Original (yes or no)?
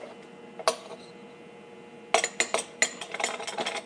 yes